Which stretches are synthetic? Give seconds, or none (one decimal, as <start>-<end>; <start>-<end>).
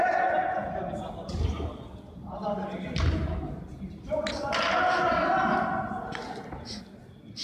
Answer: none